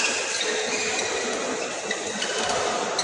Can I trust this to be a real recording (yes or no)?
yes